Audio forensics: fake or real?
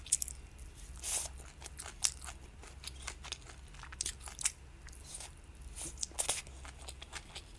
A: real